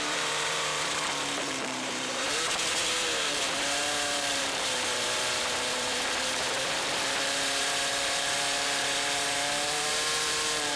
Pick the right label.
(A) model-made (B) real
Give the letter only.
A